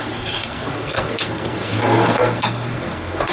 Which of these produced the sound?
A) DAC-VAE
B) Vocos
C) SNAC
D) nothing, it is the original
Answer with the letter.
C